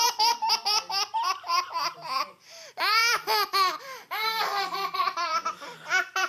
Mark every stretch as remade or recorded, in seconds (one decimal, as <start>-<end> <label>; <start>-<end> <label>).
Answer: 0.0-3.0 remade; 3.0-3.8 recorded; 3.8-6.3 remade